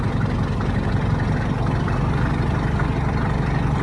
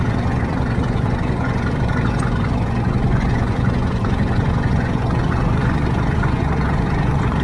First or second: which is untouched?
first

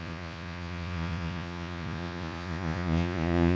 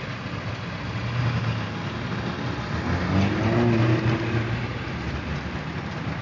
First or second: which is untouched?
second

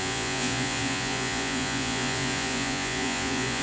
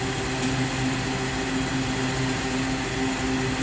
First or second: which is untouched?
second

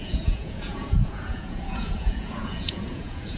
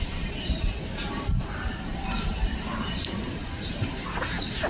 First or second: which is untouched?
second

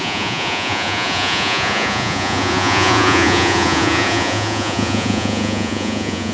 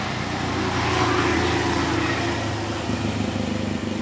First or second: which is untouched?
second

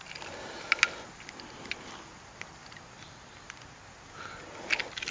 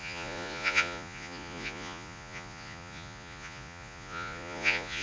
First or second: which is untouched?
first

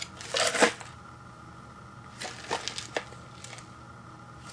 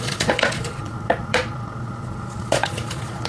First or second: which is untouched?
first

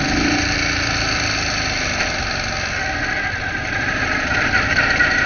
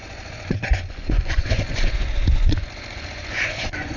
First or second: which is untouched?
first